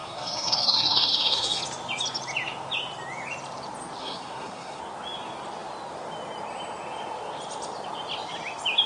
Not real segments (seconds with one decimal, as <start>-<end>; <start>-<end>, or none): 0.0-1.6; 4.0-4.8